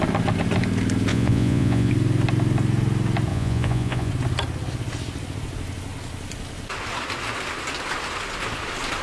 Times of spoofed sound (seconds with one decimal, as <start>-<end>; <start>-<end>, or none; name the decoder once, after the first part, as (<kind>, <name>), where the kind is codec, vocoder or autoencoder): 1.1-1.9 (vocoder, Vocos); 3.3-4.1